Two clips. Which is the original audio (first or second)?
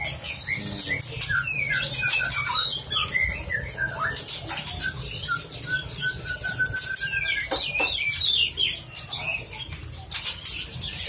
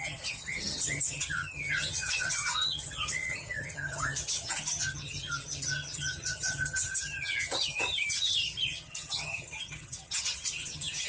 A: first